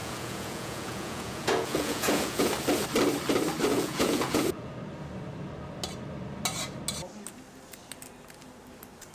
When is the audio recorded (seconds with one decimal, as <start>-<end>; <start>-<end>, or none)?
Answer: 2.5-3.7; 4.7-9.1